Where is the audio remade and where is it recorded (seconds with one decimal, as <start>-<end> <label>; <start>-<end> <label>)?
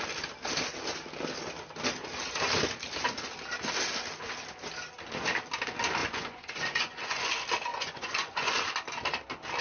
0.0-6.0 recorded; 6.0-7.3 remade; 7.3-7.7 recorded; 7.7-8.5 remade; 8.5-9.6 recorded